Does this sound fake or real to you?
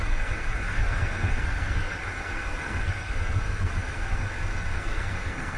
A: fake